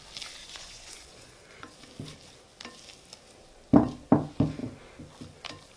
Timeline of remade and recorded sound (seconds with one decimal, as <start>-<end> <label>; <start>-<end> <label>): 0.0-0.4 recorded; 0.4-1.7 remade; 1.7-5.8 recorded